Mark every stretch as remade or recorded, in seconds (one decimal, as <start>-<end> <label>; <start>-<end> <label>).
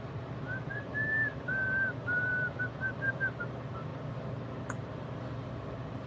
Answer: 0.0-6.1 recorded